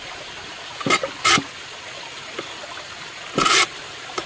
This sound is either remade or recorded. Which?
recorded